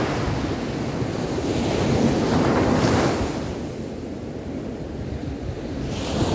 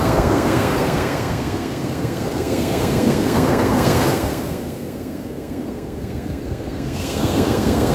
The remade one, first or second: second